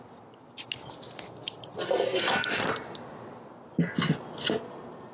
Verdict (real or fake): real